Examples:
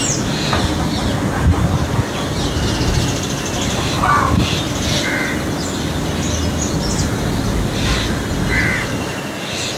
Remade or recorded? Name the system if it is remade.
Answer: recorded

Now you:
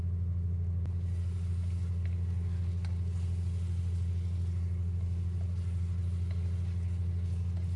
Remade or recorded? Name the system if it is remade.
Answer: recorded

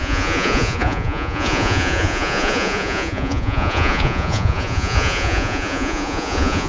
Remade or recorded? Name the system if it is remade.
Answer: remade, vocoder, Vocos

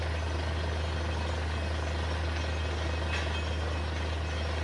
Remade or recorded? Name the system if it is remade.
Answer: recorded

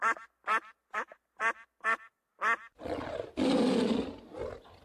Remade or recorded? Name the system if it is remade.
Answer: recorded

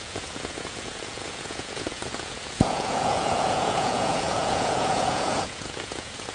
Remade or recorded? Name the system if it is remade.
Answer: remade, vocoder, Vocos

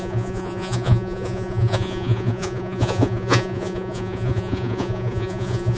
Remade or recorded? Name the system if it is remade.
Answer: remade, vocoder, Vocos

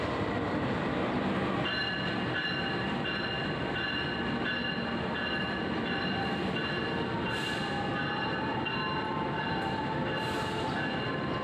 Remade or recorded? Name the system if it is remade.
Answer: recorded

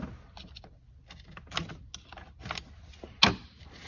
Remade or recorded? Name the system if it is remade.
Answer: recorded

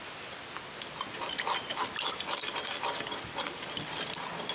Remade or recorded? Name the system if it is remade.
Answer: recorded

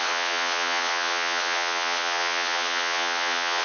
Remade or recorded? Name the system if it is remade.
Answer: remade, vocoder, WaveNeXt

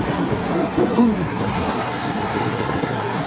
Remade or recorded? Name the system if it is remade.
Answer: remade, codec, SNAC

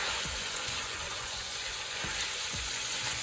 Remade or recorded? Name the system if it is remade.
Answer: remade, vocoder, Vocos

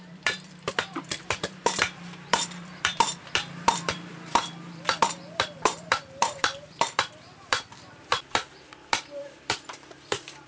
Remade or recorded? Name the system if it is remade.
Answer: remade, vocoder, BigVGAN v2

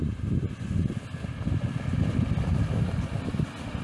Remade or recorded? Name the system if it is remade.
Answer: recorded